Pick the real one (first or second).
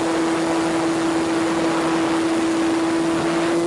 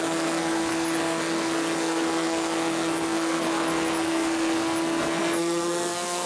first